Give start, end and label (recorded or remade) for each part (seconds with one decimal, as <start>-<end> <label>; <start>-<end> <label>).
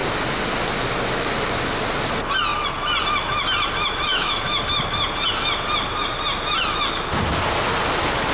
0.0-4.1 recorded; 4.1-4.6 remade; 4.6-8.3 recorded